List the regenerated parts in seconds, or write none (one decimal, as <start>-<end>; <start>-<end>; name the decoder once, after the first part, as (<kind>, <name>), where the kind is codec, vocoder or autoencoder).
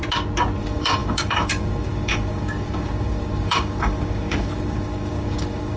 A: 0.6-5.8 (codec, DAC)